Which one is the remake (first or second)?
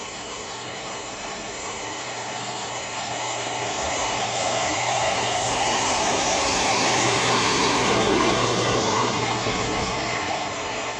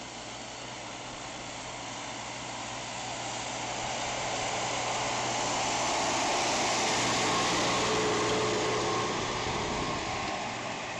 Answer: first